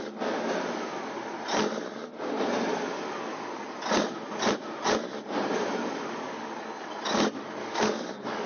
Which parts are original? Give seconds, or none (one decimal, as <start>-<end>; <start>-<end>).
0.0-7.6